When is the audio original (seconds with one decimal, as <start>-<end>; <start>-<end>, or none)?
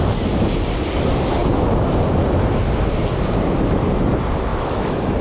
0.0-4.5